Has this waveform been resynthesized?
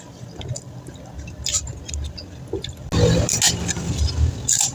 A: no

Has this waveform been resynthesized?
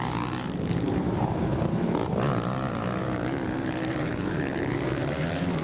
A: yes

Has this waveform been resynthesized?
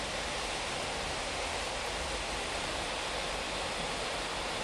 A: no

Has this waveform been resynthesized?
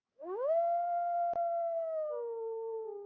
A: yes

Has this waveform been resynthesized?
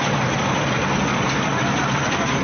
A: no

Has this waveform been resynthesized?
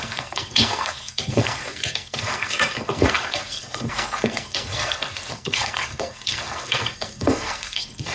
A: yes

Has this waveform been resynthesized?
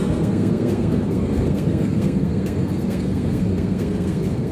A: yes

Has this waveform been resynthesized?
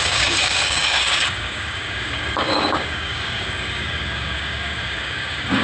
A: yes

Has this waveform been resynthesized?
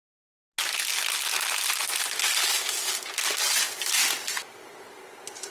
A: no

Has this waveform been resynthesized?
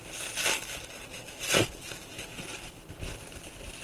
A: no